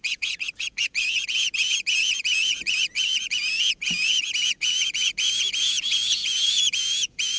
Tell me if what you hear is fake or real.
fake